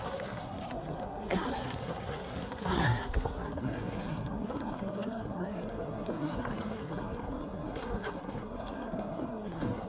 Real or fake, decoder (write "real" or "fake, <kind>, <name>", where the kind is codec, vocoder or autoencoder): fake, codec, SNAC